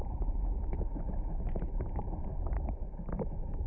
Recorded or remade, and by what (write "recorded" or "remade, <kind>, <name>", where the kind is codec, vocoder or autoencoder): remade, vocoder, BigVGAN v2